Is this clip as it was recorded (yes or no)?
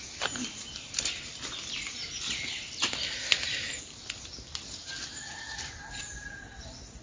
yes